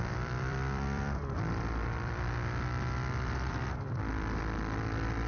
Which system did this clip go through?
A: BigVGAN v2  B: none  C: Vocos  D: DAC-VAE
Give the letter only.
A